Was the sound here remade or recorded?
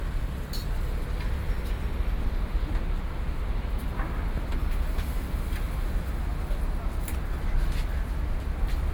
recorded